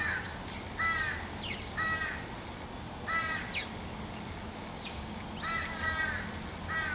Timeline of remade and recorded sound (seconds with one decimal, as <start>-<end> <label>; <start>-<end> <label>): 0.0-4.7 recorded; 4.7-5.2 remade; 5.2-6.9 recorded